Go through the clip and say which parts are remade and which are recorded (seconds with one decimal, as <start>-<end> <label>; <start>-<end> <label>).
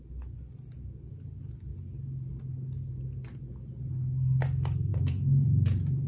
0.0-4.9 recorded; 4.9-6.1 remade